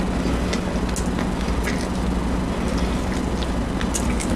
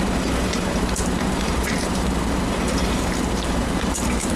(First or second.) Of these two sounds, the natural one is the first